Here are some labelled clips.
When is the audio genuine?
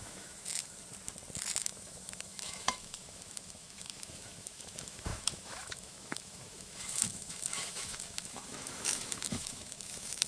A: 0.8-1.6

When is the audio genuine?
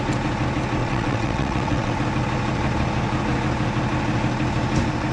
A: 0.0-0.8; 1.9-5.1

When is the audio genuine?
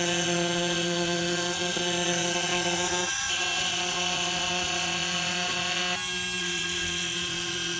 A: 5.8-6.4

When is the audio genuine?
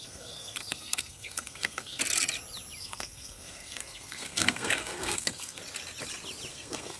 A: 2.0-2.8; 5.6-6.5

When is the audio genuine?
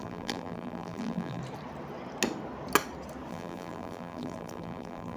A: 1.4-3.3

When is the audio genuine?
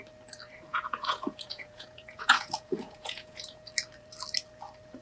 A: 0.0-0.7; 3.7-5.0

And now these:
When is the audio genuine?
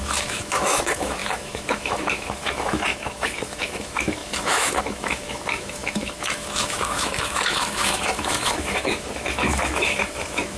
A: none